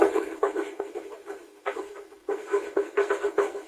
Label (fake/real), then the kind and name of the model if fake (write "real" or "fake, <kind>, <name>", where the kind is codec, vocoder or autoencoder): fake, codec, SNAC